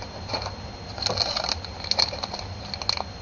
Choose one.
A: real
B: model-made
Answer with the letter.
A